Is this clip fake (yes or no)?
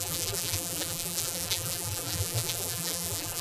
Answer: yes